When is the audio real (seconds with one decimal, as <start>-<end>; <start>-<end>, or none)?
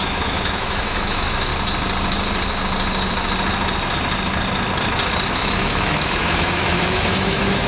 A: 1.5-5.3